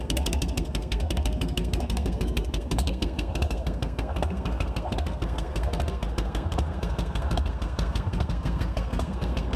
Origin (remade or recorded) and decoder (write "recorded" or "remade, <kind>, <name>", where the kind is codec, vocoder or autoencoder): remade, codec, SNAC